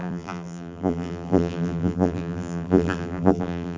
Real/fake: fake